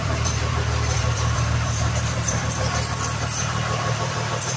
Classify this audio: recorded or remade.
remade